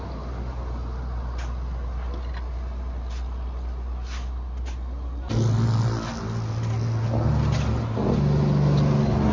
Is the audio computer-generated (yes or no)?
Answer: no